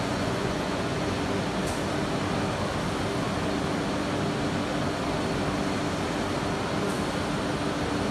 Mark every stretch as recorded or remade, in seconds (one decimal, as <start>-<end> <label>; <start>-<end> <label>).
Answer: 0.0-1.3 remade; 1.3-8.1 recorded